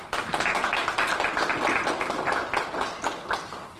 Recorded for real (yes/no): yes